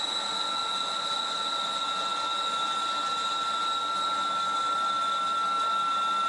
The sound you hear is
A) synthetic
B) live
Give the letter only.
B